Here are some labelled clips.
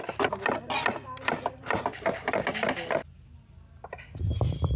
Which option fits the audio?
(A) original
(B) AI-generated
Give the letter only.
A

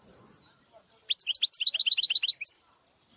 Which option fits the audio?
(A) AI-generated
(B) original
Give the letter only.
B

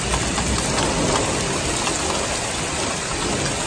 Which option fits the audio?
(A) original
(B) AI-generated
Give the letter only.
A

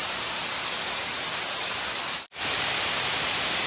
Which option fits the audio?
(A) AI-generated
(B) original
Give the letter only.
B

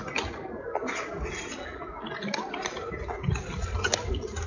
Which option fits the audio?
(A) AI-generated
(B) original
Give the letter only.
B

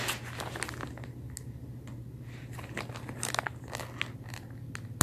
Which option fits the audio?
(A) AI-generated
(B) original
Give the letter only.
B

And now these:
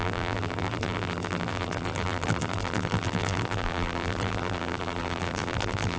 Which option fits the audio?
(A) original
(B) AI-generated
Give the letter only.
B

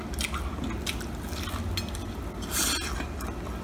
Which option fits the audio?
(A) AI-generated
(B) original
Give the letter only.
B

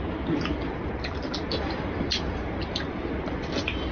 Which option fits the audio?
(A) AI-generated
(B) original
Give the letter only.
B